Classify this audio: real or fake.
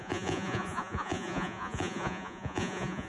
fake